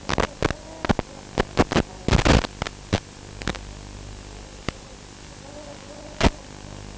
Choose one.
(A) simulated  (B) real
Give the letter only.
B